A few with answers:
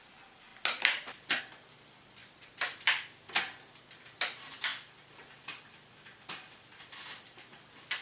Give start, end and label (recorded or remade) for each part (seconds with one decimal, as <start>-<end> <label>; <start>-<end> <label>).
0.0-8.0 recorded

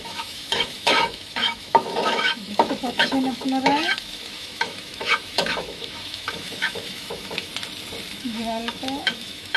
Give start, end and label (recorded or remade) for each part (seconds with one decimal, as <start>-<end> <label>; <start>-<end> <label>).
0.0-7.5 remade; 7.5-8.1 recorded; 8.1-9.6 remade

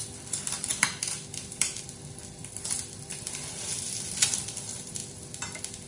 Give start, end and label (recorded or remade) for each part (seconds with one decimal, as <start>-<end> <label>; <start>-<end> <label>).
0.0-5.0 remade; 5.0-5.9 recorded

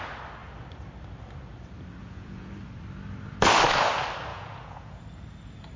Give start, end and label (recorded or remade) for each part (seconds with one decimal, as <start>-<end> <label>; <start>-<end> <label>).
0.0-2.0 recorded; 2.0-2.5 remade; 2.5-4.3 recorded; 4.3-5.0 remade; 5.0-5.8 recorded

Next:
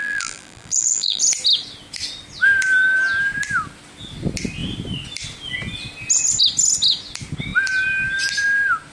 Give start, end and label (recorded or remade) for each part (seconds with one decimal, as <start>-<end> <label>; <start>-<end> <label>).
0.0-1.2 remade; 1.2-8.9 recorded

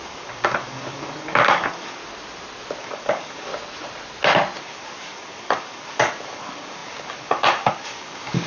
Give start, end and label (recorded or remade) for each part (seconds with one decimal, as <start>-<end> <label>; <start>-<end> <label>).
0.0-2.0 remade; 2.0-2.8 recorded; 2.8-3.5 remade; 3.5-4.6 recorded; 4.6-8.5 remade

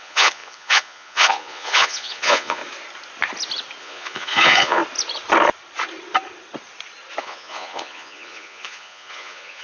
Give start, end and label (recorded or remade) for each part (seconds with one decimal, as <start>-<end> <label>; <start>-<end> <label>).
0.0-2.6 remade; 2.6-3.8 recorded; 3.8-4.8 remade; 4.8-7.2 recorded; 7.2-9.6 remade